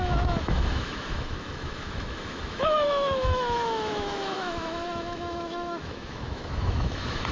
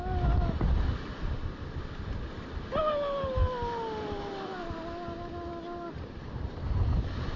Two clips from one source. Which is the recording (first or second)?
second